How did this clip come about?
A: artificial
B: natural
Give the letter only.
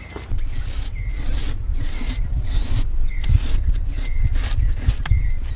B